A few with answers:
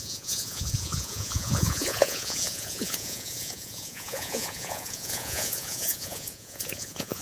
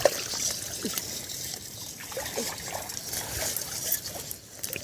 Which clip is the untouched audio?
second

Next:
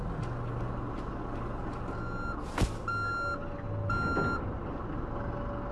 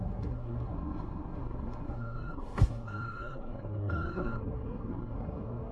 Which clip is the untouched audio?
first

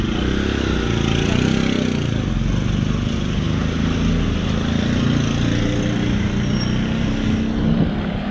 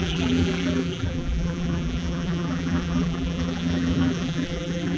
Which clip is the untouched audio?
first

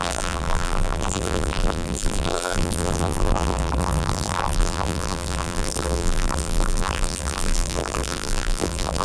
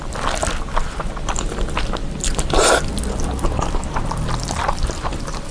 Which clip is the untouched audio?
second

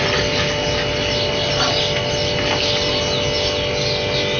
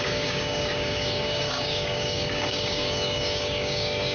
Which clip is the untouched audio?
first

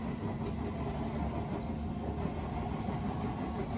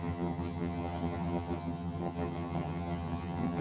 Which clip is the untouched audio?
first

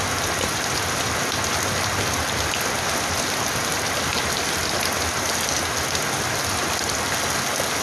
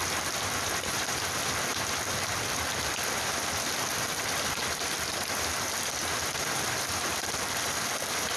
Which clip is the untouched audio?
first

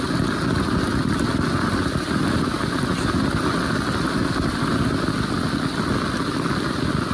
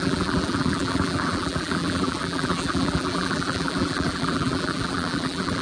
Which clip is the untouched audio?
first